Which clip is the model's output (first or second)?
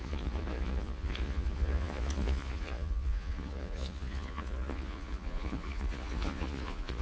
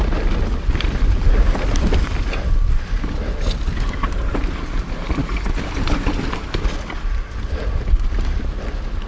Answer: first